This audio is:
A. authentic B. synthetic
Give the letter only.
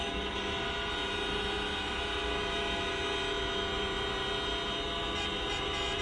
A